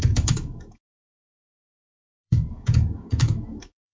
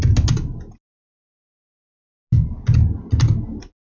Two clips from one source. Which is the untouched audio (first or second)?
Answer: second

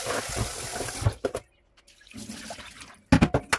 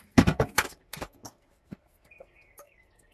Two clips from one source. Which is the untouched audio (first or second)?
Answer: first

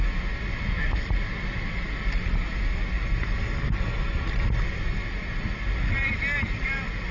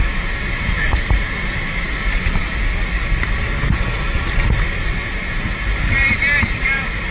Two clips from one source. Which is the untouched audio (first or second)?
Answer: first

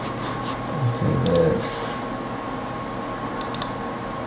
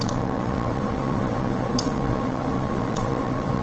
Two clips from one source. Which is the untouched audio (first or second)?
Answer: first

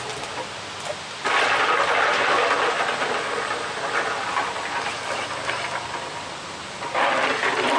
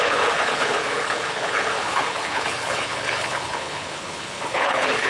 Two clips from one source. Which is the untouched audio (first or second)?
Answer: first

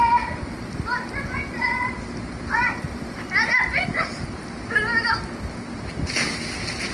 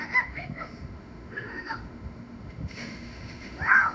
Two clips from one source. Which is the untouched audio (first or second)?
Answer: first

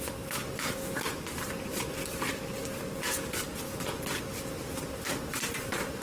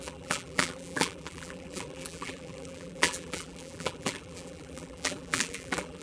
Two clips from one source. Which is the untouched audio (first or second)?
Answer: first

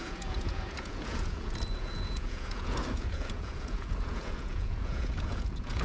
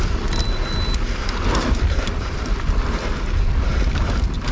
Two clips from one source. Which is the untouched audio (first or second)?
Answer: second